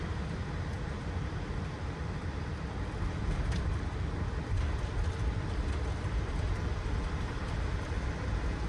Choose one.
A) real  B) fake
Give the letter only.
B